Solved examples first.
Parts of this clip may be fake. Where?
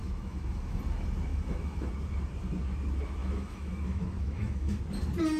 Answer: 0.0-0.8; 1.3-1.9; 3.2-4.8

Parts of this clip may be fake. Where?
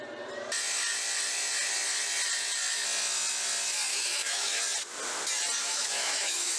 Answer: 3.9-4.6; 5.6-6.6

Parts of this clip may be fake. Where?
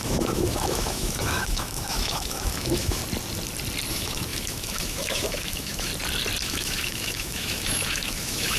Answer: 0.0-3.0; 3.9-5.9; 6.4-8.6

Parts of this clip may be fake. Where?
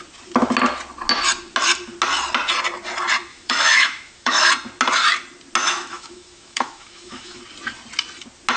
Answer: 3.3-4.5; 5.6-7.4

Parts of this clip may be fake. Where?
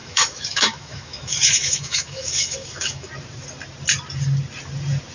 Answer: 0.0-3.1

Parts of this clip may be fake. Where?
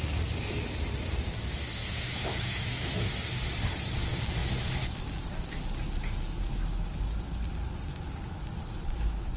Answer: 1.8-3.1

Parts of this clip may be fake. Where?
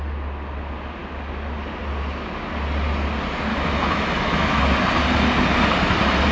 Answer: 3.5-4.6